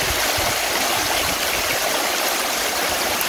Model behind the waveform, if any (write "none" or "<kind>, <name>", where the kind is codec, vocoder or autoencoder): none